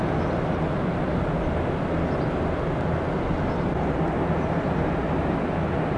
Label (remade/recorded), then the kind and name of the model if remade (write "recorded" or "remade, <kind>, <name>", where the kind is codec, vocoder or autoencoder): recorded